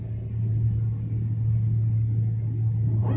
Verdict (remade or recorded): recorded